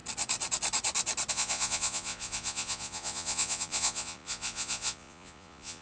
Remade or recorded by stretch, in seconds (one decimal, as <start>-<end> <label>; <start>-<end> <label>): 0.0-1.3 recorded; 1.3-5.8 remade